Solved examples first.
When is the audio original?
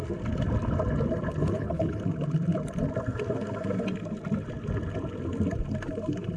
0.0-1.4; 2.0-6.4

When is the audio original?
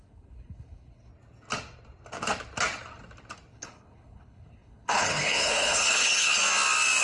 1.1-3.5; 6.4-7.0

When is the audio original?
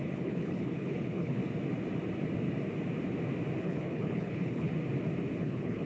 1.4-3.6; 4.7-5.4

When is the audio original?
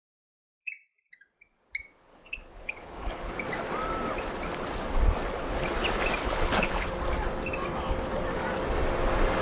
0.0-2.1; 3.3-6.2; 6.9-9.4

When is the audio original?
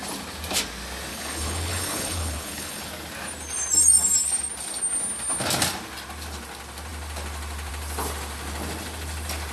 0.0-1.1; 2.9-9.5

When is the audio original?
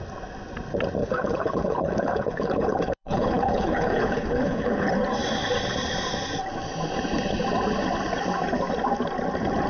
0.0-1.0; 4.9-9.7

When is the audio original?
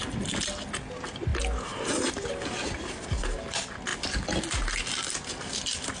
0.0-6.0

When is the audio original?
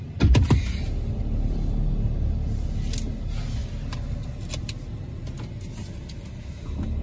0.0-7.0